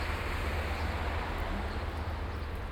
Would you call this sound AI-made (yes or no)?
no